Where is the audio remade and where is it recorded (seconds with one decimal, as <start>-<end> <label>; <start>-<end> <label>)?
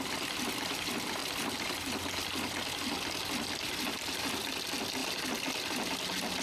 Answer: 0.0-6.4 recorded